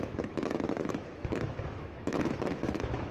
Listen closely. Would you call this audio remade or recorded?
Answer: remade